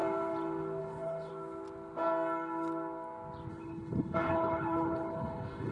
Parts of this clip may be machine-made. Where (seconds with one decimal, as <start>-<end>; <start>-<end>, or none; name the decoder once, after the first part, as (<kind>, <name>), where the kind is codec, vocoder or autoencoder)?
0.8-1.3 (codec, HILCodec); 3.5-5.7